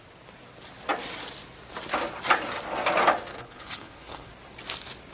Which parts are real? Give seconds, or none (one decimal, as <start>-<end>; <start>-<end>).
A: 0.0-3.3; 4.3-5.1